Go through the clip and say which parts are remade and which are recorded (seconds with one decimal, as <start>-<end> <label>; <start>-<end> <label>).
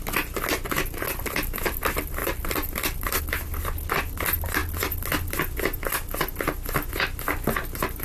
0.0-2.2 recorded; 2.2-3.2 remade; 3.2-8.0 recorded